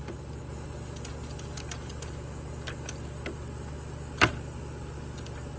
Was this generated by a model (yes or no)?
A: no